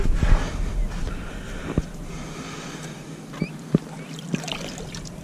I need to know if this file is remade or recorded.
recorded